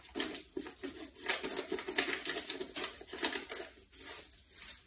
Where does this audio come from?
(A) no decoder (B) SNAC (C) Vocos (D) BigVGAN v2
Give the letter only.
A